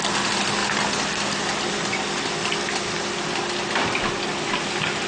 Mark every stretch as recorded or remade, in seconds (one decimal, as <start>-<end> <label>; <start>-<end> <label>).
0.0-5.1 recorded